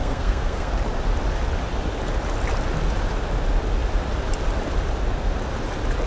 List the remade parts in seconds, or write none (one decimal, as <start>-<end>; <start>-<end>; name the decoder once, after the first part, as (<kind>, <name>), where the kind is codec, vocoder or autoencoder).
0.0-0.7 (codec, SNAC)